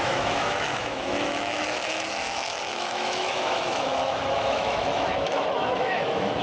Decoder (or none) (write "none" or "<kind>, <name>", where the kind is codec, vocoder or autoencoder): autoencoder, DAC-VAE